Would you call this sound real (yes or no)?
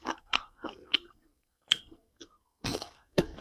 no